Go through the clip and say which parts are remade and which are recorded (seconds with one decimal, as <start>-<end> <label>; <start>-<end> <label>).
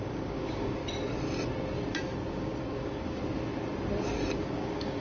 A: 0.0-0.8 remade; 0.8-2.3 recorded; 2.3-3.2 remade; 3.2-4.5 recorded; 4.5-5.0 remade